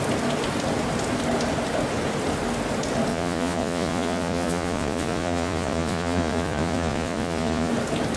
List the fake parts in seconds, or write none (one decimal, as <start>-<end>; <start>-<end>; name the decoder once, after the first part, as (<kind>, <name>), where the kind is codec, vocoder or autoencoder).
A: 3.1-7.7 (vocoder, Vocos)